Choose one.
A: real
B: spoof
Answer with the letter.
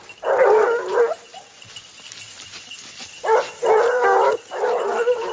A